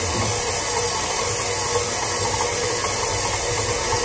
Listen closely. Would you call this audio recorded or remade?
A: recorded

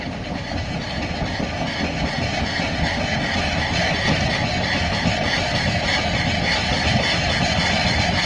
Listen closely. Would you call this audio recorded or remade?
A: recorded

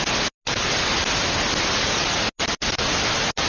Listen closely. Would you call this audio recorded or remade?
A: recorded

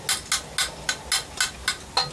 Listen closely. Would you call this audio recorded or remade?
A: recorded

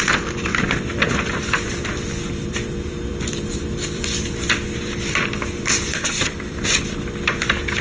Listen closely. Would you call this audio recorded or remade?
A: remade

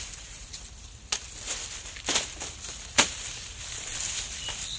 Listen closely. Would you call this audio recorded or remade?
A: remade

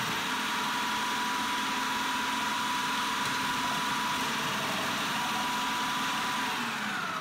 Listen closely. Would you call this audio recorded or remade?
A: recorded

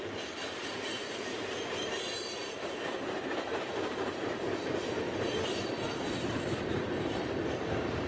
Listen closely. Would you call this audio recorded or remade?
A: remade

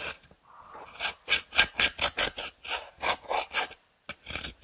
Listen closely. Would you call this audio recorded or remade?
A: recorded